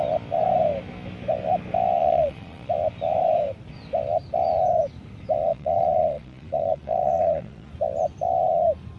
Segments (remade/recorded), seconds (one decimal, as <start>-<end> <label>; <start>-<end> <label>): 0.0-2.0 recorded; 2.0-2.7 remade; 2.7-5.5 recorded; 5.5-7.7 remade; 7.7-9.0 recorded